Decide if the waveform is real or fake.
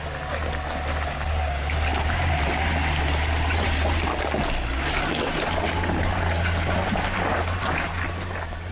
real